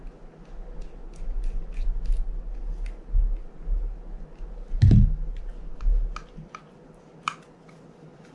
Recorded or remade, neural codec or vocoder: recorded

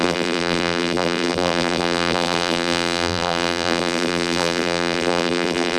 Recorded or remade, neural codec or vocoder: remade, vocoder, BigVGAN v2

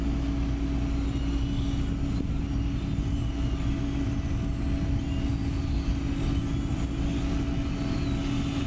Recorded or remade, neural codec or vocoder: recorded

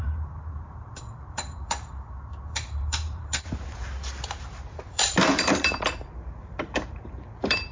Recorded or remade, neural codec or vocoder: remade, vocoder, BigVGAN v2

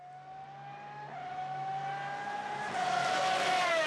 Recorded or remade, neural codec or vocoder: recorded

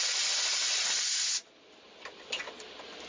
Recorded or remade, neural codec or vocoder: recorded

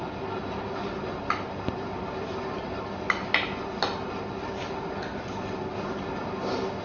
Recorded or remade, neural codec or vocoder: recorded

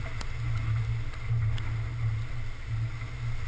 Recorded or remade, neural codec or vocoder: recorded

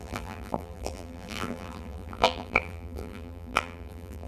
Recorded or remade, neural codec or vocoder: remade, vocoder, BigVGAN v2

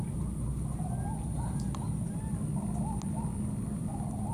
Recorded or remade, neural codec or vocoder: recorded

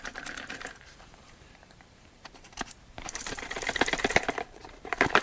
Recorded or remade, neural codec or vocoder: remade, vocoder, BigVGAN v2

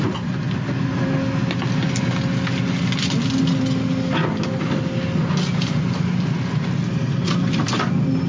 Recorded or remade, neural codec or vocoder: recorded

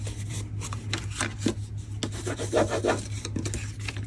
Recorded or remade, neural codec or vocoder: recorded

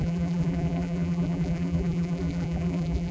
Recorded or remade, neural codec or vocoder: remade, vocoder, BigVGAN v2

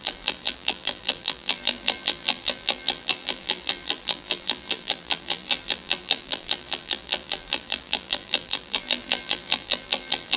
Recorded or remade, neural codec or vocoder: remade, vocoder, BigVGAN v2